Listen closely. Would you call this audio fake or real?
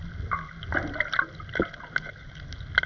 real